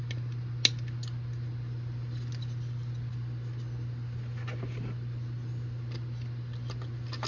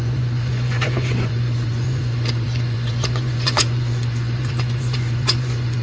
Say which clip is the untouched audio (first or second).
first